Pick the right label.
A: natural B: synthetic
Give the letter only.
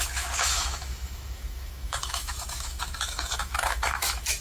B